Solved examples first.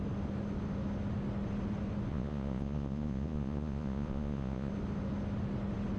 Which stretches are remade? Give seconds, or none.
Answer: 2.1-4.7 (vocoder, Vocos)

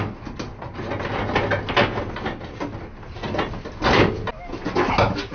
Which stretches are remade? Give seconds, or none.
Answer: none

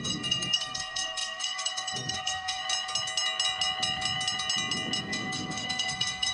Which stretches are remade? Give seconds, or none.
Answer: 0.0-2.6 (codec, SNAC); 5.0-6.3

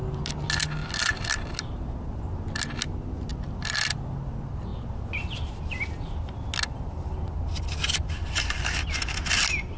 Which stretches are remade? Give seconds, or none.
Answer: 3.3-4.0 (vocoder, BigVGAN v2)